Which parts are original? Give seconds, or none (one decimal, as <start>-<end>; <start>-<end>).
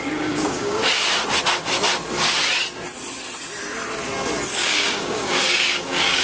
0.8-4.5